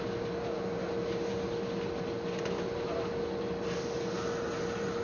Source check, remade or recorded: recorded